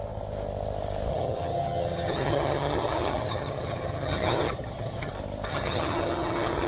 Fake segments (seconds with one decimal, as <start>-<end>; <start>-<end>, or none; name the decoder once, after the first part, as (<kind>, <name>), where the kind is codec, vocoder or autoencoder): 1.1-5.1 (vocoder, HiFi-GAN); 5.5-6.7